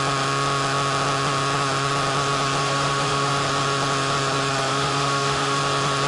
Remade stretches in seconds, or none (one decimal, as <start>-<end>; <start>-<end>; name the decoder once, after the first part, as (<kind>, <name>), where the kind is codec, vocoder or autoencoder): 2.6-3.3 (autoencoder, DAC-VAE); 4.7-5.6

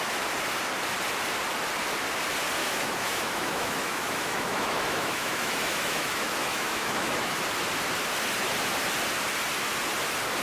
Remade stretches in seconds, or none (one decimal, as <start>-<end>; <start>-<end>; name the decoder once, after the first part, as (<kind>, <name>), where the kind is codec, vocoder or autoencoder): 2.6-7.4 (autoencoder, DAC-VAE)

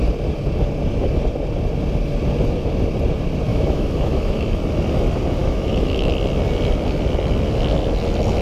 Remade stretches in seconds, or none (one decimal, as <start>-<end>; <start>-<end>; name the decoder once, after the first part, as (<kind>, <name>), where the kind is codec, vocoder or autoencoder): 3.5-4.5 (autoencoder, DAC-VAE); 5.4-6.1

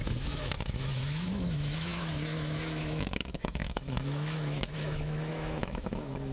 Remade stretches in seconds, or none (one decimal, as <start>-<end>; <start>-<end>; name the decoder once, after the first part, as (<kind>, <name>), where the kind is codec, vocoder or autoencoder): 0.0-6.3 (autoencoder, DAC-VAE)